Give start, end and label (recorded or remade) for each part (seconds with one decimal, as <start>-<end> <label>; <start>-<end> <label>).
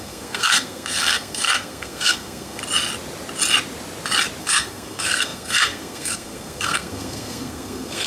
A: 0.0-2.6 remade; 2.6-4.4 recorded; 4.4-8.1 remade